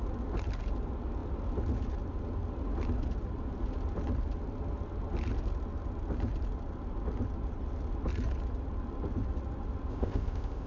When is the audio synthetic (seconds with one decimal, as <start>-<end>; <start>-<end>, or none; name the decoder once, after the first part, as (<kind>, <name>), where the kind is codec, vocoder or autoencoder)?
9.9-10.7 (codec, ZipCodec)